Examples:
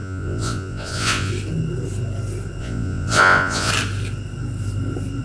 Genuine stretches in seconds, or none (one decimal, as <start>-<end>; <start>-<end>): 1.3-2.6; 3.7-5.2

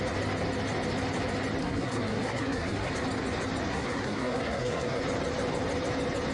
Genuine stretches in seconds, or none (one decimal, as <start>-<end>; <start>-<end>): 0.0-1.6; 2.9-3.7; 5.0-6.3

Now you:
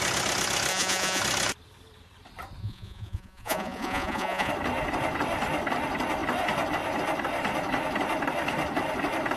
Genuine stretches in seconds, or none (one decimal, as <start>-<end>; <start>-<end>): 0.0-0.7; 1.2-2.6; 4.5-9.4

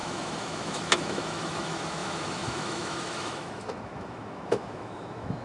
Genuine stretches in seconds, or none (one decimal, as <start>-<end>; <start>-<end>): none

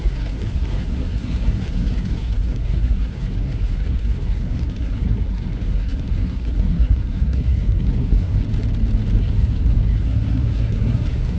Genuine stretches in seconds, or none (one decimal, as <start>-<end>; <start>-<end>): 8.4-9.2